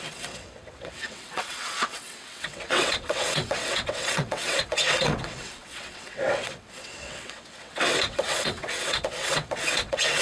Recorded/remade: remade